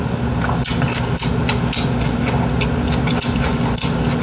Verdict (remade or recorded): recorded